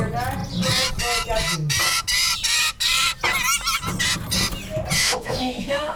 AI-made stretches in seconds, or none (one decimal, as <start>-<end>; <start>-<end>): 5.0-6.0